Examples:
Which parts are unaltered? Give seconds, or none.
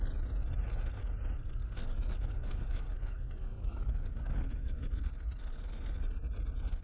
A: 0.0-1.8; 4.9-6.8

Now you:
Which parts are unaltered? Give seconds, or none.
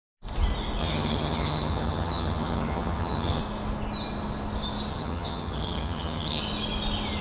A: 0.0-0.8; 3.4-4.9; 6.4-7.2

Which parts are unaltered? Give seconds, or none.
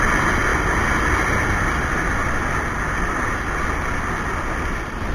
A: 0.0-5.1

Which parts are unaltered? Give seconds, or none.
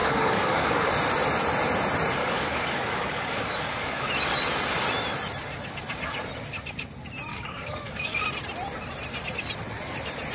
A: 0.9-2.2; 4.0-7.3; 8.2-10.3